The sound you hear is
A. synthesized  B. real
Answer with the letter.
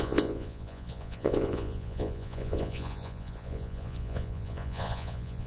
A